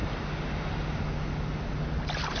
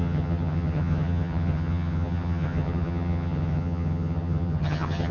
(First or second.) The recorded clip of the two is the first